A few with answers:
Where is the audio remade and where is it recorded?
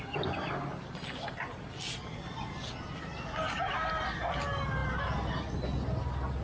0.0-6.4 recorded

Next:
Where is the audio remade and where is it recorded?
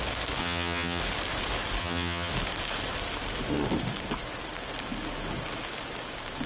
0.0-0.4 recorded; 0.4-1.0 remade; 1.0-1.8 recorded; 1.8-2.3 remade; 2.3-6.5 recorded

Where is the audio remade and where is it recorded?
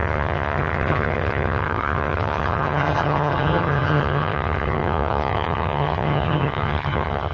0.0-7.3 remade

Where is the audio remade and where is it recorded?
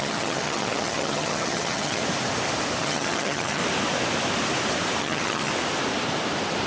0.0-2.0 remade; 2.0-2.8 recorded; 2.8-3.6 remade; 3.6-5.0 recorded; 5.0-5.5 remade; 5.5-6.7 recorded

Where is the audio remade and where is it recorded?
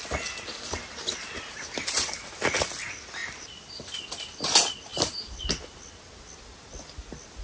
0.0-7.4 recorded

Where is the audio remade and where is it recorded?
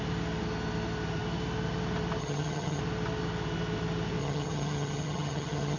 0.0-2.2 recorded; 2.2-2.8 remade; 2.8-4.2 recorded; 4.2-5.8 remade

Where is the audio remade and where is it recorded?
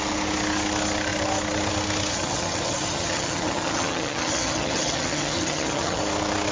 0.0-2.1 recorded; 2.1-6.0 remade; 6.0-6.5 recorded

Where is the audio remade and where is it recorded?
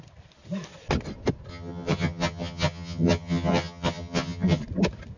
0.0-1.5 recorded; 1.5-4.6 remade; 4.6-5.2 recorded